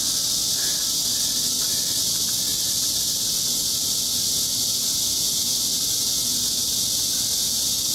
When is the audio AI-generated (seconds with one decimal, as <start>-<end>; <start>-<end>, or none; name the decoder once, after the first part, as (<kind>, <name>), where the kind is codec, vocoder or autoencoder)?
none